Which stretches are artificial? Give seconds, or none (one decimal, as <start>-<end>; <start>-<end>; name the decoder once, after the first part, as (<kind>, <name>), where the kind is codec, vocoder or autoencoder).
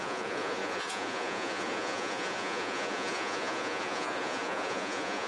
0.0-5.3 (vocoder, Vocos)